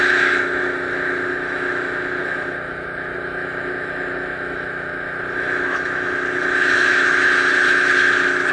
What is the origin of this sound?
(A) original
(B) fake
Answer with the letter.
B